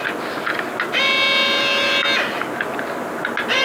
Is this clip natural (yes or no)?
yes